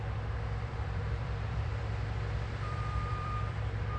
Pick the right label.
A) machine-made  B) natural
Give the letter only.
A